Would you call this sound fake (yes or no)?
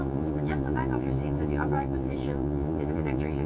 yes